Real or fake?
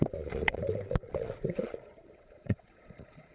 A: fake